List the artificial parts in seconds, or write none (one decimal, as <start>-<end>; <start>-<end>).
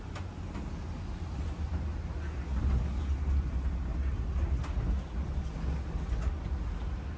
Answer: none